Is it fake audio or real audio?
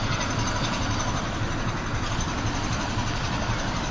real